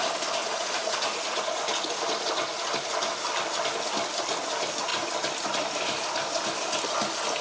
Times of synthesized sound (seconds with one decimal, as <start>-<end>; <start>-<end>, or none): 0.4-2.0